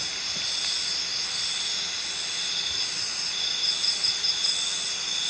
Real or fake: real